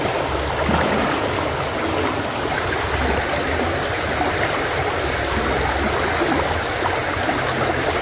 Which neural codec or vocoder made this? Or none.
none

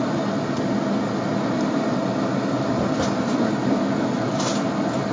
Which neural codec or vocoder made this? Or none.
none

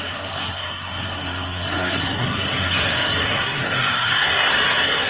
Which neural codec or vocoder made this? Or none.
codec, SNAC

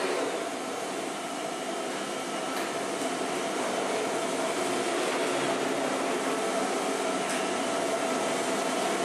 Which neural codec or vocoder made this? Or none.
none